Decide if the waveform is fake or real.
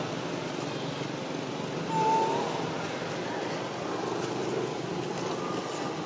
real